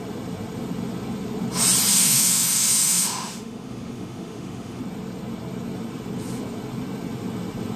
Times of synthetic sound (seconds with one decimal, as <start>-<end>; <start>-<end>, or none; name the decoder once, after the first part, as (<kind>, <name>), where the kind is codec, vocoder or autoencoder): 1.9-4.8 (autoencoder, DAC-VAE)